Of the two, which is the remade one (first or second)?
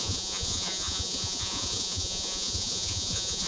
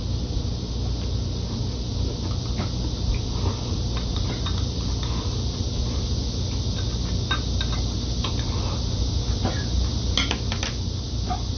first